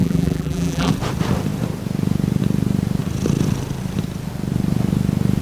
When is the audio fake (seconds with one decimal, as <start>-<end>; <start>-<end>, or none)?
0.0-0.9